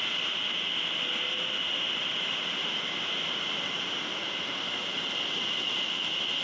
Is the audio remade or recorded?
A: recorded